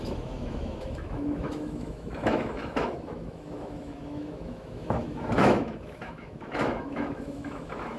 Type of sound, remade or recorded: remade